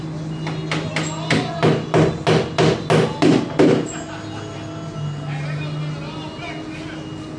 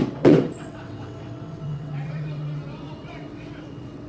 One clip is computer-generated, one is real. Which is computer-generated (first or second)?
second